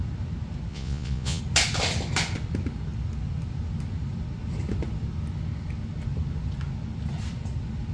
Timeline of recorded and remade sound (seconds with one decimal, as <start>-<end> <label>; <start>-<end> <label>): 0.0-0.7 recorded; 0.7-1.4 remade; 1.4-7.9 recorded